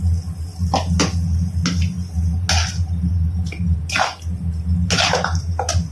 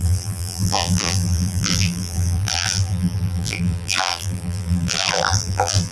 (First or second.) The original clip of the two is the first